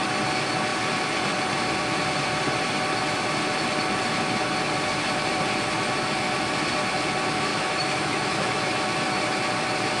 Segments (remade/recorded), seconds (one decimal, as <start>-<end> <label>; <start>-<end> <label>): 0.0-7.5 recorded; 7.5-8.7 remade; 8.7-10.0 recorded